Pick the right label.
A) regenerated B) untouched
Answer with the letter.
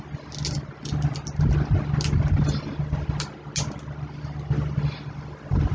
B